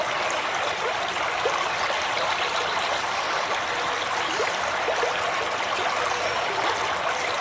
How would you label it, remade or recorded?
recorded